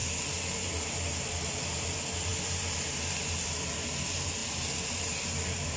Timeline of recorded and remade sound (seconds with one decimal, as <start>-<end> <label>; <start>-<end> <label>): 0.0-5.8 recorded